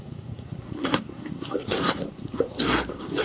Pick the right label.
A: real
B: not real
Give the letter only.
B